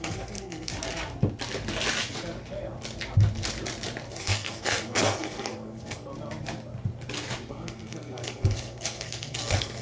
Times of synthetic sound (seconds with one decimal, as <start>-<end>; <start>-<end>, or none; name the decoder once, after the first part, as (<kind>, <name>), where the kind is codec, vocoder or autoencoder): 0.0-0.7 (codec, SNAC); 4.1-6.1; 7.5-9.8